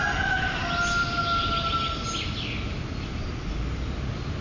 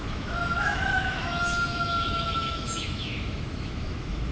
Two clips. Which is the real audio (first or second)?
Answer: first